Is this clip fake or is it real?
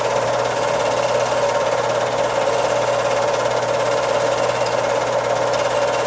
real